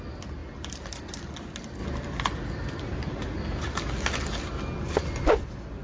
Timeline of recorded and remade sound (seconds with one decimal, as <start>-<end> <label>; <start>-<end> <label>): 0.0-5.8 recorded